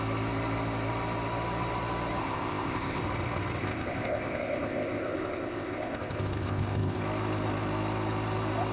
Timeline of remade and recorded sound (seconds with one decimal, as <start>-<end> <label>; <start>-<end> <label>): 0.0-2.2 recorded; 2.2-3.0 remade; 3.0-3.6 recorded; 3.6-7.0 remade; 7.0-8.7 recorded